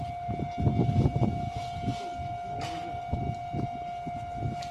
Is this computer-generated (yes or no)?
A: no